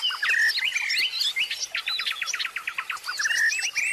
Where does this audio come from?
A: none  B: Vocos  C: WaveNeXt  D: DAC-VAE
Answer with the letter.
A